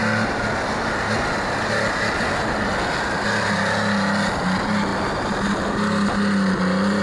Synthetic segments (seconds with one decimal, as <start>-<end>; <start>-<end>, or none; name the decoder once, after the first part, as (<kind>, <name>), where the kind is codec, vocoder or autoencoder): none